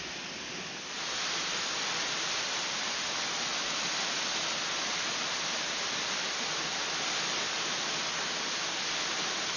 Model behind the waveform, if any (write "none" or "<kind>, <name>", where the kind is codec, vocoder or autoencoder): none